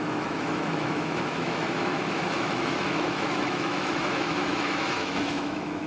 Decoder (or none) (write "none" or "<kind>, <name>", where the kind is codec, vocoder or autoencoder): autoencoder, DAC-VAE